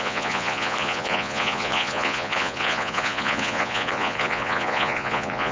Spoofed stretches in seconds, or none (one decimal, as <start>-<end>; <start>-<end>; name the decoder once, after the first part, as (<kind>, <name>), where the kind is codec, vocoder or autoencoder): 0.0-5.5 (vocoder, Vocos)